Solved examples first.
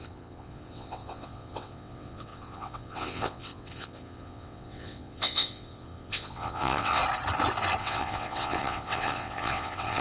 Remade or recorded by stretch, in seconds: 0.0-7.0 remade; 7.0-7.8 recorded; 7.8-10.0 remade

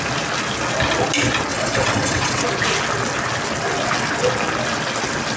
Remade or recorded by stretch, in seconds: 0.0-1.5 recorded; 1.5-2.4 remade; 2.4-5.4 recorded

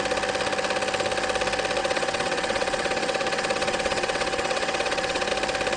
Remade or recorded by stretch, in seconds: 0.0-1.8 recorded; 1.8-5.3 remade; 5.3-5.8 recorded